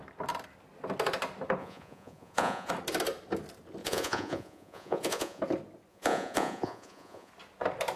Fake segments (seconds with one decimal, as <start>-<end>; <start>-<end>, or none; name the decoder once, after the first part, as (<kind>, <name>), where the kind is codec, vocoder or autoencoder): 1.6-2.7 (vocoder, Vocos); 3.8-5.4; 5.9-7.3